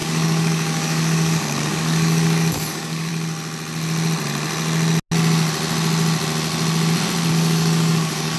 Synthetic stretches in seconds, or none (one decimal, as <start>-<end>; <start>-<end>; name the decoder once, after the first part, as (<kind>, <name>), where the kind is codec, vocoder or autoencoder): 0.0-3.1 (codec, DAC); 7.3-8.4